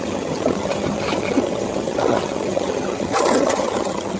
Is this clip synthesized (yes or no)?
yes